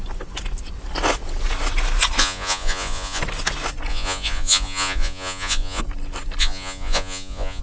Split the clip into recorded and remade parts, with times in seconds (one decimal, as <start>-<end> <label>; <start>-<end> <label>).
0.0-2.2 recorded; 2.2-3.2 remade; 3.2-3.9 recorded; 3.9-5.8 remade; 5.8-6.4 recorded; 6.4-7.6 remade